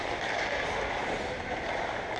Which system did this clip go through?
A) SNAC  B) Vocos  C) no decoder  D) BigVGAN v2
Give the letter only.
C